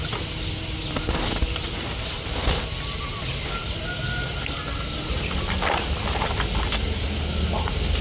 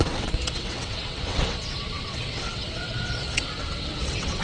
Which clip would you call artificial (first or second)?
second